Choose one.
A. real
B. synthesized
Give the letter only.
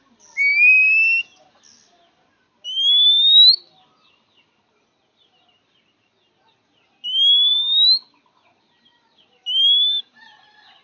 A